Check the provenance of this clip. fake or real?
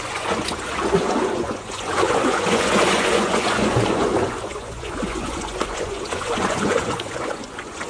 fake